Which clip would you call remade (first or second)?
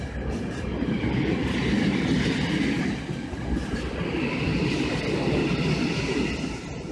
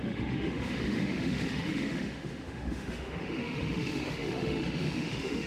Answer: second